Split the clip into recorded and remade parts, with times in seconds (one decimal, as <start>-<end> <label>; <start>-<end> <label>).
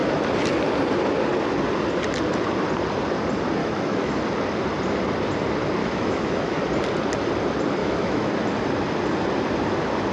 0.0-3.6 recorded; 3.6-4.1 remade; 4.1-5.8 recorded; 5.8-6.6 remade; 6.6-7.8 recorded; 7.8-8.3 remade; 8.3-10.1 recorded